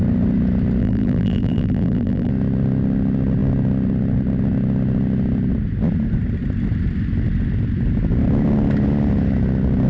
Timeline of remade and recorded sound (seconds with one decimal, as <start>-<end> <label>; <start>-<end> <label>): 0.0-0.8 recorded; 0.8-2.3 remade; 2.3-9.9 recorded